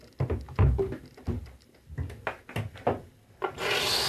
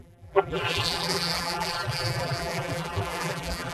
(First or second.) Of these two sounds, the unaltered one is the first